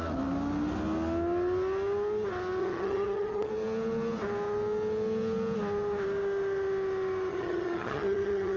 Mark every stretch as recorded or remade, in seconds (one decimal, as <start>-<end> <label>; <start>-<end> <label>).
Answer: 0.0-2.6 recorded; 2.6-3.5 remade; 3.5-7.3 recorded; 7.3-8.6 remade